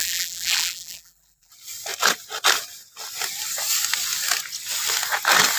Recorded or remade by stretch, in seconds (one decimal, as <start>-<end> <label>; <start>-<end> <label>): 0.0-1.5 remade; 1.5-5.6 recorded